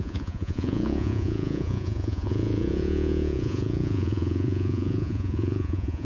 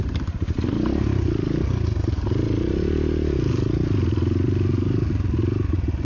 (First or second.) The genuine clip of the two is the second